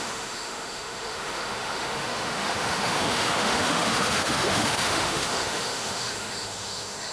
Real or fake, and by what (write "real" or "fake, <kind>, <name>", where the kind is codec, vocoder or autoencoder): fake, autoencoder, DAC-VAE